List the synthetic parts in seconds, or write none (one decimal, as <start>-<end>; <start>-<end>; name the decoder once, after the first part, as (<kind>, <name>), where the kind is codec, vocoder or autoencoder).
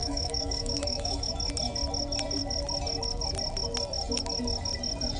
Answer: 0.0-1.3 (autoencoder, DAC-VAE)